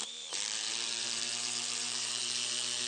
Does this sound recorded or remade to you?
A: remade